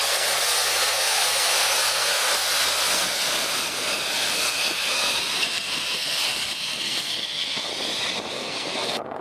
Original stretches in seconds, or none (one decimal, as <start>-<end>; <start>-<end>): 7.7-8.3

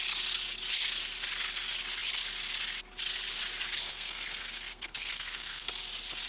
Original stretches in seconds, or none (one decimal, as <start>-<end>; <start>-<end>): 0.0-3.9; 5.7-6.3

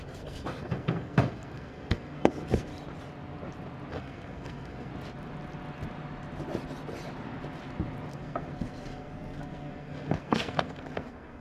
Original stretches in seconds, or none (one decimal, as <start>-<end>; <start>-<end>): 2.7-3.9; 4.9-8.1

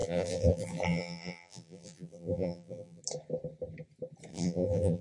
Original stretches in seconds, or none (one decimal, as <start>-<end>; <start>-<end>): 3.0-4.3

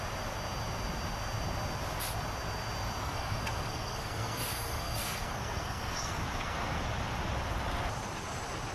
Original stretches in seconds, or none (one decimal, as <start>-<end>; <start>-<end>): 0.0-3.0; 6.8-8.7

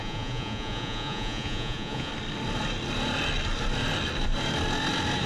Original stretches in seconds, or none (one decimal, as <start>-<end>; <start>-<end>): 2.1-5.3